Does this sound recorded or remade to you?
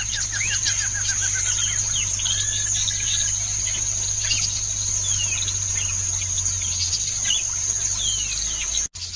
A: recorded